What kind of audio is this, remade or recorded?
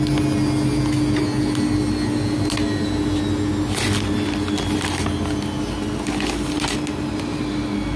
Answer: recorded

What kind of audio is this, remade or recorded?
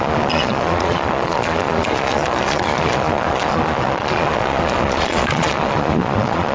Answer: remade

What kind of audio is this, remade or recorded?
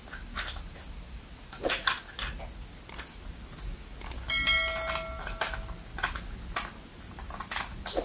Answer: recorded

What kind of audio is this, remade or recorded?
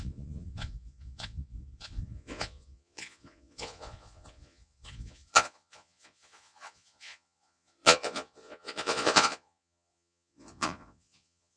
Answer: remade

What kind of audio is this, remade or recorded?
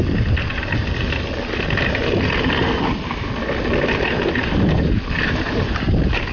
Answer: recorded